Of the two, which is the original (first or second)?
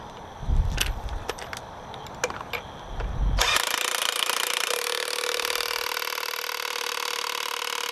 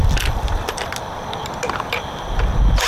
first